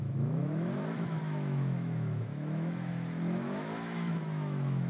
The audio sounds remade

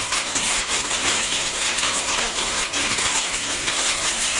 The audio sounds remade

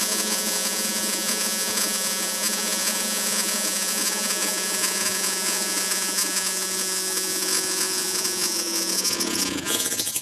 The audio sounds remade